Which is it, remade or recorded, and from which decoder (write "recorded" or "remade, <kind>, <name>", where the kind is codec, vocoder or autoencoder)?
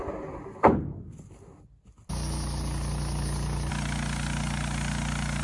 recorded